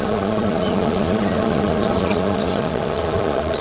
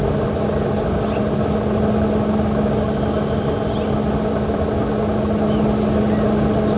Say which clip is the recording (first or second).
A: second